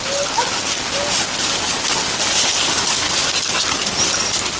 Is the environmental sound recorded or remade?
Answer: recorded